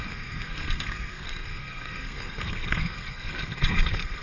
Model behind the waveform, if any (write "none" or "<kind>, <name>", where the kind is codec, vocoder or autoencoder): codec, SNAC